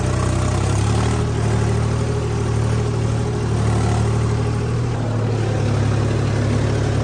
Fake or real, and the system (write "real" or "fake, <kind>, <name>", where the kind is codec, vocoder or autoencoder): real